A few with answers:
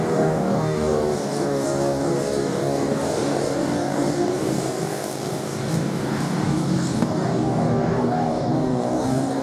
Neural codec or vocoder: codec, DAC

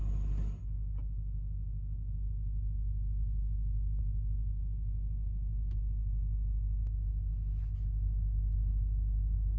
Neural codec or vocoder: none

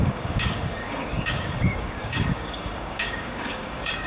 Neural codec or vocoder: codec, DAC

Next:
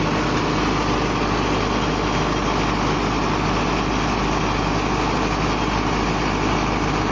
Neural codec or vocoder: none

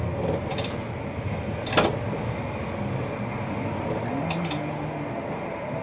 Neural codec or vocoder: none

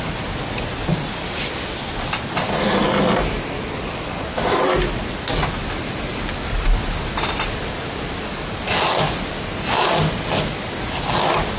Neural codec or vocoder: none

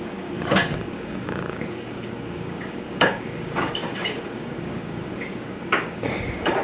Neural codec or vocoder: codec, DAC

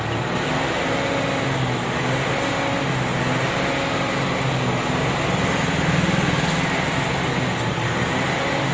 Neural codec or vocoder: none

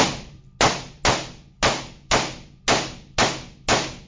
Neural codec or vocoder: none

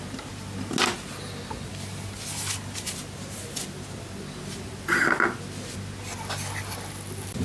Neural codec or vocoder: none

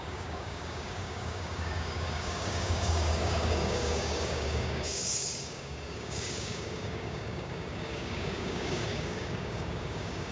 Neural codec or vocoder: codec, DAC